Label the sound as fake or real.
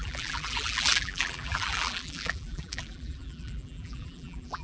fake